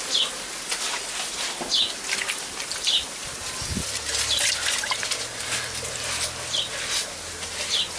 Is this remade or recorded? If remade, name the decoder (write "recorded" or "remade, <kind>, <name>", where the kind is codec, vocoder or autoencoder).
recorded